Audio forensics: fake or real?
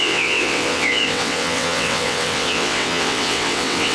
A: fake